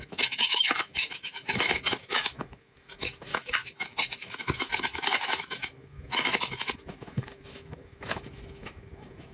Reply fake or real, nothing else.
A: fake